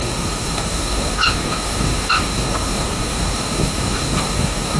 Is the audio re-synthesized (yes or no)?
yes